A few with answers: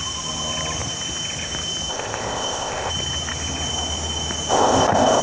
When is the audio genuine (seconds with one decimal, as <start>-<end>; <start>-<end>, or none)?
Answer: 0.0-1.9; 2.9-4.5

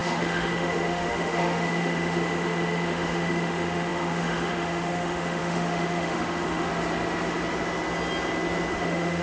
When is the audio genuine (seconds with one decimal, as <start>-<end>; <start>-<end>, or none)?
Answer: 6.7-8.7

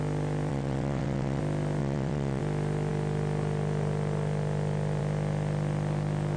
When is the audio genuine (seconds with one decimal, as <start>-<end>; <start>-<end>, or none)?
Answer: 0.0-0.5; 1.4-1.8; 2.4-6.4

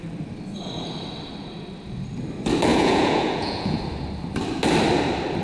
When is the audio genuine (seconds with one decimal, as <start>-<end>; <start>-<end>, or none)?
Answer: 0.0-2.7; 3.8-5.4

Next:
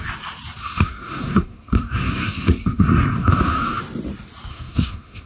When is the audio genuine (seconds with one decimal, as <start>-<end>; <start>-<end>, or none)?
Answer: 0.0-0.6; 3.8-4.5

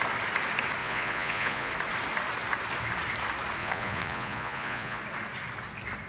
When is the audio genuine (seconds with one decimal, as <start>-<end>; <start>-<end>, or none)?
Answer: 0.0-0.8; 1.7-3.6; 5.0-6.1

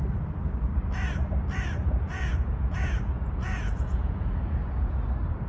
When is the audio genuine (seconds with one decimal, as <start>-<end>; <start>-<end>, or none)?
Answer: 0.0-1.8; 5.1-5.5